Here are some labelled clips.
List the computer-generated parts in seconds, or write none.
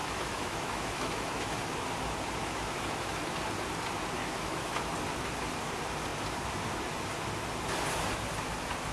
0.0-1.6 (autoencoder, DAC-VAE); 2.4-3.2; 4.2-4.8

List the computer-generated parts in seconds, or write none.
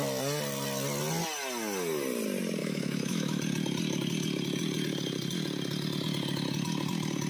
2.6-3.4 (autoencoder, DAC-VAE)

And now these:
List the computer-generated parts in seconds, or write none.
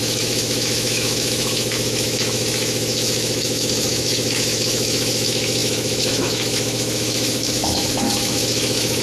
0.0-9.0 (autoencoder, DAC-VAE)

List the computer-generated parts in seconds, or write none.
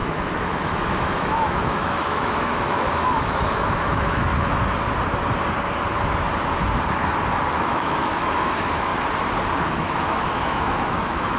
0.0-4.3 (autoencoder, DAC-VAE); 7.5-8.9; 9.7-11.4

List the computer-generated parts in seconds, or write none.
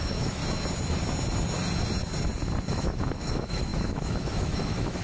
0.0-0.4 (autoencoder, DAC-VAE); 2.7-5.0